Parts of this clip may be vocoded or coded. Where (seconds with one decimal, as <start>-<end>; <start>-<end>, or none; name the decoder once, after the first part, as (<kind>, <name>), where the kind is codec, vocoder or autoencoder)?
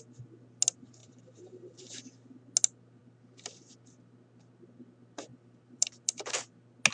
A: 1.0-2.0 (vocoder, BigVGAN v2); 3.0-3.7; 5.3-6.5